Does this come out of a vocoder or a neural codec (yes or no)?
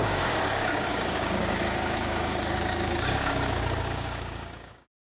yes